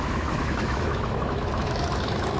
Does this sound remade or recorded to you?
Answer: remade